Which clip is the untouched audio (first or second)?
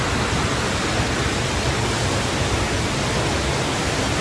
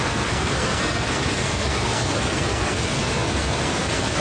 first